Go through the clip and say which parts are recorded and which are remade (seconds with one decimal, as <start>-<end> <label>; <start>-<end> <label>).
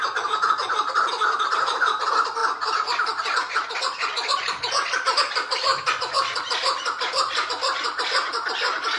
0.0-9.0 recorded